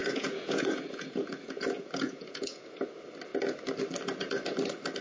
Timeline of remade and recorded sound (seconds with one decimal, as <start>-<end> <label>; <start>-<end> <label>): 0.0-2.8 remade; 2.8-5.0 recorded